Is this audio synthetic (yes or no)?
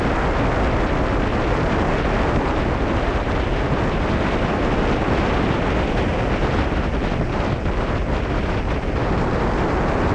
no